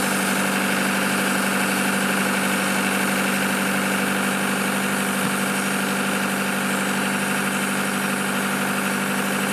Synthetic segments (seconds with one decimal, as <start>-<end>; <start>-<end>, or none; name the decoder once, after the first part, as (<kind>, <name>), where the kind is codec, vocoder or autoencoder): none